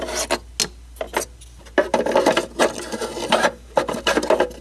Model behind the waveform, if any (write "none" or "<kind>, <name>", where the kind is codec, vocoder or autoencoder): none